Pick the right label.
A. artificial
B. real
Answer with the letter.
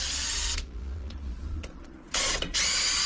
A